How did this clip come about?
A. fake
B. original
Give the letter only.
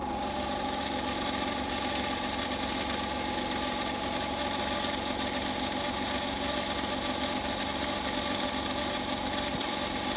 B